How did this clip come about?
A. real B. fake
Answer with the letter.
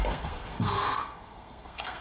B